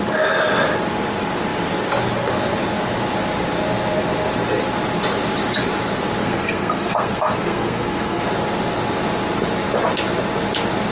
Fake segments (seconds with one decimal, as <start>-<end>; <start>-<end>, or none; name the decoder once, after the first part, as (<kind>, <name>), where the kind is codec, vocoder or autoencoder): 6.2-8.2 (codec, SNAC)